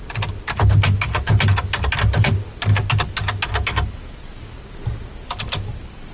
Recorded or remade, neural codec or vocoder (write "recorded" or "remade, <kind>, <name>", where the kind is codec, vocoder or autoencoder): recorded